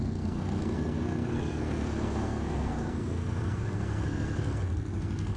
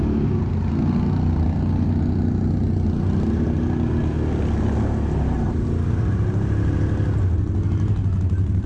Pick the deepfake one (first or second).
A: first